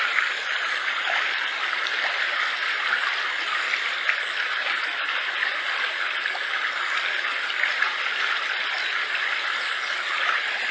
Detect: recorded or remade recorded